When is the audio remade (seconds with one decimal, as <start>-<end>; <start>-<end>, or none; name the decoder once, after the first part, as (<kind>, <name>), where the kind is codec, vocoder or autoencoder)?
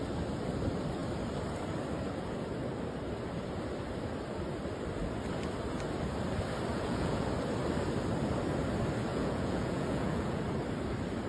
6.7-7.3 (vocoder, Vocos); 9.1-10.4